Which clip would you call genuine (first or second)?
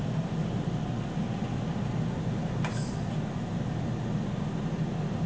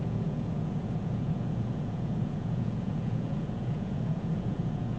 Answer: first